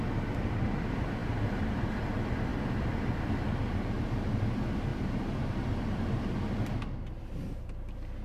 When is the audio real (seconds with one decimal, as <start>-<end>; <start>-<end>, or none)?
none